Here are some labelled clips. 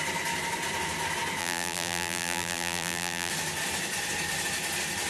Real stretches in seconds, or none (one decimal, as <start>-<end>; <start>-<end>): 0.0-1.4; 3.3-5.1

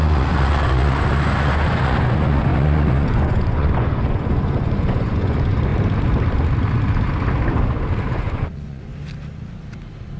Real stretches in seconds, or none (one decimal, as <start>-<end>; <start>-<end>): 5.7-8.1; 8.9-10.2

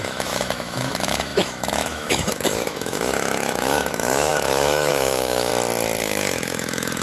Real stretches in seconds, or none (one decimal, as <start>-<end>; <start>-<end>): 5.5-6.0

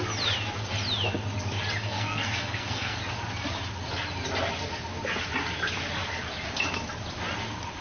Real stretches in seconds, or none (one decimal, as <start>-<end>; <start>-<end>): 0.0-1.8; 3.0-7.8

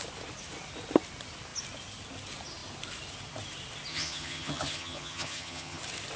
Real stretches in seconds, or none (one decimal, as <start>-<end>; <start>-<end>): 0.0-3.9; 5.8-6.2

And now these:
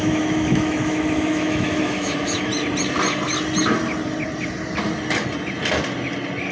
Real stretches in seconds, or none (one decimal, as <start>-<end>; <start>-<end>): 2.5-6.5

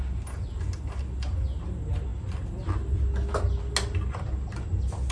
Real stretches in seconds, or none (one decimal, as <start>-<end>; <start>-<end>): 0.0-5.1